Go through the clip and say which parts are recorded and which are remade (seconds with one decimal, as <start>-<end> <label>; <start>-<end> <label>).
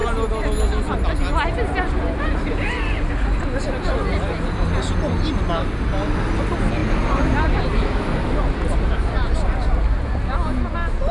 0.0-11.1 recorded